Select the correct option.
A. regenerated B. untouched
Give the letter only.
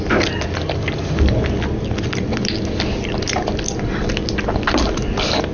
B